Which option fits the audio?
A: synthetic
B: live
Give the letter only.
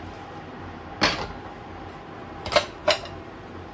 B